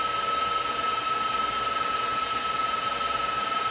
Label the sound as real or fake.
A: real